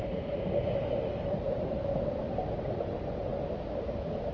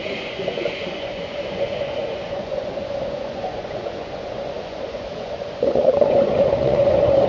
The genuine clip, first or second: first